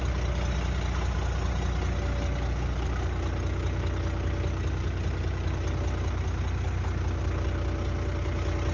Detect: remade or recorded recorded